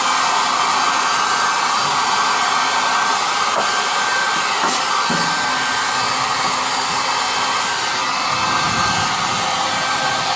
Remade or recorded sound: recorded